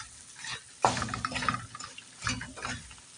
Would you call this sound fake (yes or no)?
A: no